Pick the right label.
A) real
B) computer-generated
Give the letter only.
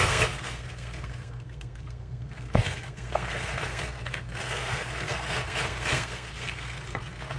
B